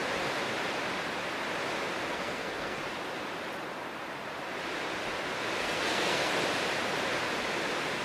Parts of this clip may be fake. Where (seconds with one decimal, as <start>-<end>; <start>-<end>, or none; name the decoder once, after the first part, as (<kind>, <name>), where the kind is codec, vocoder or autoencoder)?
2.1-2.8 (codec, SNAC); 5.6-6.3